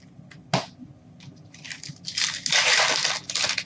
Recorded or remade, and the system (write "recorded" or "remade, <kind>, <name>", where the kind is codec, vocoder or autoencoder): recorded